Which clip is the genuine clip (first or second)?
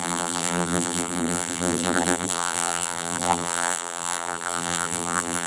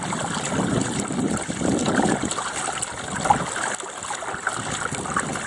second